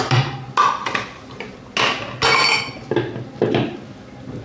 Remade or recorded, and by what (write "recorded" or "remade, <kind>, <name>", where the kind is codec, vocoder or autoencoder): recorded